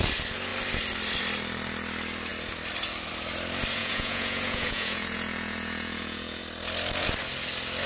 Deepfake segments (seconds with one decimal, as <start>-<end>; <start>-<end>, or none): 3.8-6.4